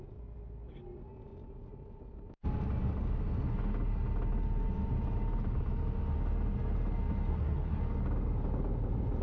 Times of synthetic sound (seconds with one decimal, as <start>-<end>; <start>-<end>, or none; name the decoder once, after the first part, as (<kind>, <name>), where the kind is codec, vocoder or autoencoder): 7.3-7.8 (codec, SNAC)